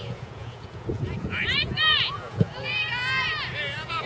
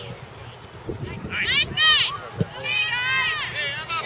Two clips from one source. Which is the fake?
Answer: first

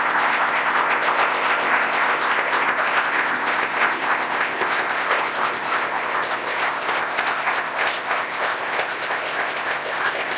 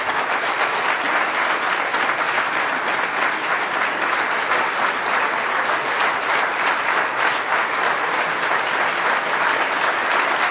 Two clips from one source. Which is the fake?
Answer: first